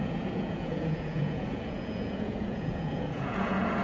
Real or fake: fake